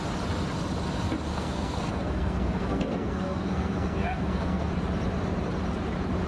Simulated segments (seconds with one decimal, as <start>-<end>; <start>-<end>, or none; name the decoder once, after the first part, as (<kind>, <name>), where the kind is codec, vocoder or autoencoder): 1.3-4.7 (codec, SNAC)